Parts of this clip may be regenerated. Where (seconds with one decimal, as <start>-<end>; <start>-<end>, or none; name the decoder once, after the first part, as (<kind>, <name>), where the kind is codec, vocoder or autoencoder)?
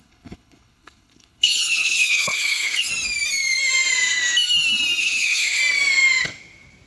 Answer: 0.0-2.9 (codec, HILCodec); 5.0-5.6